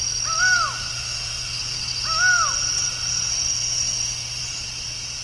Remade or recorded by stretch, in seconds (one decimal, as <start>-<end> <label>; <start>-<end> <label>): 0.0-0.9 recorded; 0.9-1.6 remade; 1.6-3.3 recorded; 3.3-4.4 remade; 4.4-5.2 recorded